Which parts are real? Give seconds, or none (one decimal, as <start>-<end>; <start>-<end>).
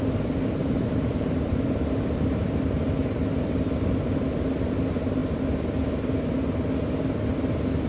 0.0-0.6; 1.5-7.9